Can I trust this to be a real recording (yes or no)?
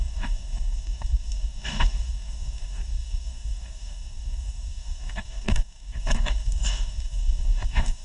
no